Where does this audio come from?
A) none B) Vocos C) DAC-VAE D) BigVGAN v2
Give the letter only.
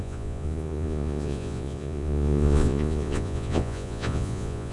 B